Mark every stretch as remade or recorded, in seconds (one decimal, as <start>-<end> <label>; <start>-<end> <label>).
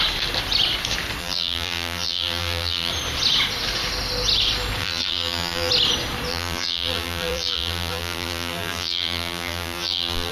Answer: 0.0-1.2 recorded; 1.2-2.9 remade; 2.9-4.8 recorded; 4.8-5.7 remade; 5.7-6.3 recorded; 6.3-10.3 remade